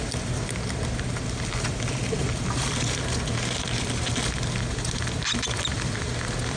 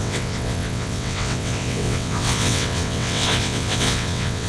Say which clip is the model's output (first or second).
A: second